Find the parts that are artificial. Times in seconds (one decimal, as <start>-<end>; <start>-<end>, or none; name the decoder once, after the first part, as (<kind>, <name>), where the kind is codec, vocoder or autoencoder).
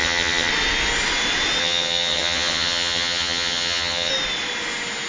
0.0-0.5 (vocoder, HiFi-GAN); 1.6-4.1